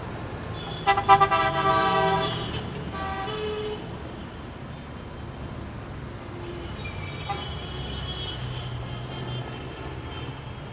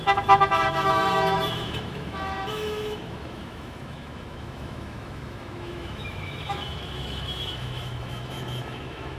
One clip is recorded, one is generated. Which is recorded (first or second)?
first